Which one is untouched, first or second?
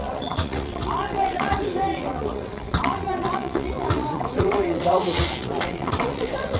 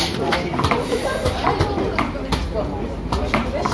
second